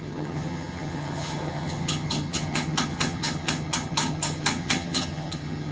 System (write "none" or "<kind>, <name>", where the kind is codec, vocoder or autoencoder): vocoder, HiFi-GAN